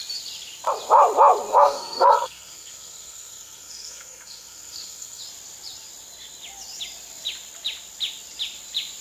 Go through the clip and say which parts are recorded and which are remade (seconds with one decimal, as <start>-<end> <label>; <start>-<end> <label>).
0.0-1.5 recorded; 1.5-5.2 remade; 5.2-9.0 recorded